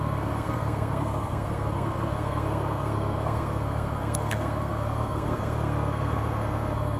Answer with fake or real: fake